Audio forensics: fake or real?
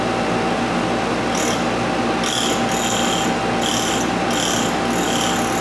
real